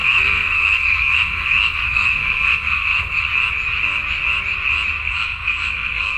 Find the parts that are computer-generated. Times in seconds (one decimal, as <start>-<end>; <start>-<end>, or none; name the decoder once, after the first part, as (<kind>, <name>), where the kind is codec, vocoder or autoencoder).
0.0-3.3 (codec, SNAC); 5.0-6.2